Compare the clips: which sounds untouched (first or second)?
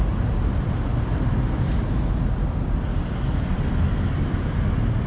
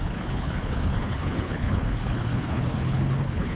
first